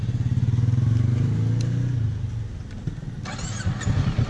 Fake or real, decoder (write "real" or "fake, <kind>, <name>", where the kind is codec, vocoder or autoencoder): real